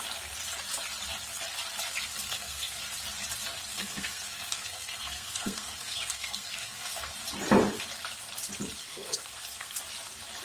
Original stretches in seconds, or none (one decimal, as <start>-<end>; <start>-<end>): 0.0-2.1; 2.8-3.7; 7.1-8.8; 9.8-10.4